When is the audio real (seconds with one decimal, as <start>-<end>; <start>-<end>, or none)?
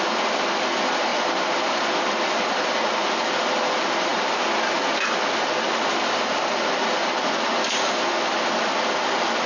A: 0.0-9.5